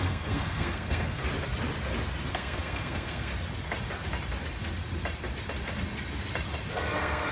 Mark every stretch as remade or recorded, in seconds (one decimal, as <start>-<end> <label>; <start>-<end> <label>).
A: 0.0-1.2 remade; 1.2-2.3 recorded; 2.3-3.3 remade; 3.3-6.7 recorded; 6.7-7.3 remade